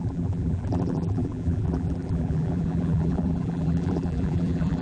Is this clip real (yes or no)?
no